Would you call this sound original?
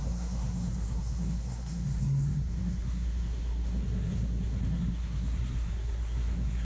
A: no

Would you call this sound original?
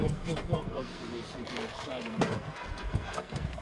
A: no